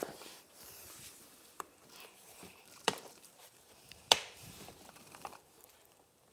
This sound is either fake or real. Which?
fake